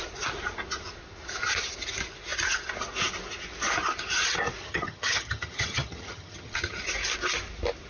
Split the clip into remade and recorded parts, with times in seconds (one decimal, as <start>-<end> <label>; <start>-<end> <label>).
0.0-4.6 recorded; 4.6-6.8 remade; 6.8-7.9 recorded